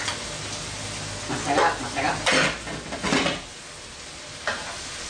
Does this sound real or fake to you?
real